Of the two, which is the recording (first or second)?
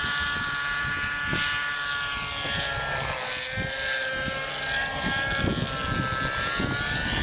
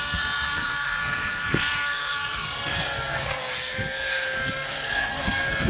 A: first